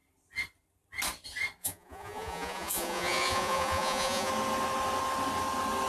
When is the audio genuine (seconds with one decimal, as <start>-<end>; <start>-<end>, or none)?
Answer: 0.0-1.6; 4.3-5.9